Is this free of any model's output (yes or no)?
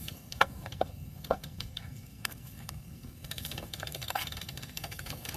no